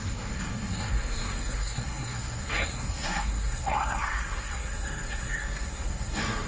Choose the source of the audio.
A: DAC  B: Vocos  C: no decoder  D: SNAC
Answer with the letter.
D